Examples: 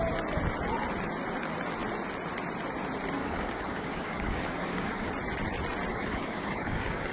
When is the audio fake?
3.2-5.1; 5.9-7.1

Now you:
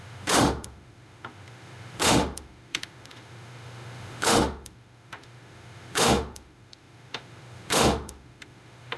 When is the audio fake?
0.0-9.0